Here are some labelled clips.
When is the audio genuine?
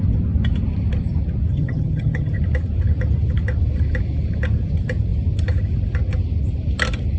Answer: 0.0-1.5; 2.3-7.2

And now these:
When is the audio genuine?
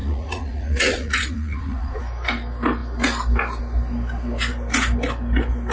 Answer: 2.0-5.7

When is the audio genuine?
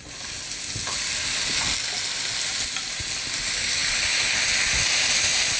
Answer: 0.0-5.6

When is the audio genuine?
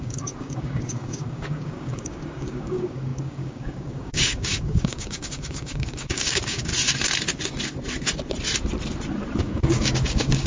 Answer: 6.7-9.4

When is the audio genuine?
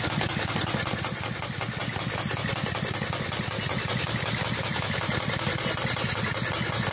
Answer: 0.0-6.9